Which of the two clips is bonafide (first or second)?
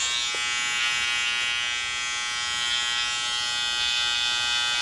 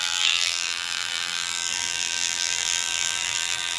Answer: first